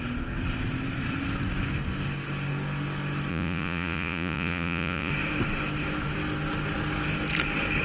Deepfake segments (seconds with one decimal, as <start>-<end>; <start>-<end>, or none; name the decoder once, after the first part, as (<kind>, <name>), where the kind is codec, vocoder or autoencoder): 3.3-5.1 (vocoder, Vocos)